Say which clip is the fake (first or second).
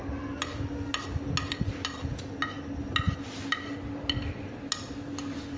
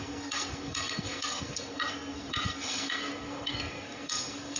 second